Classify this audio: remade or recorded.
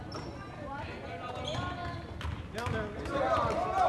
recorded